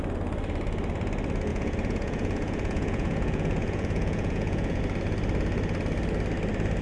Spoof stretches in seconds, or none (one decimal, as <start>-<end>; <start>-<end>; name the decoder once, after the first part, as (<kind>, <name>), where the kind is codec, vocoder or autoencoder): 1.5-4.8 (vocoder, Vocos)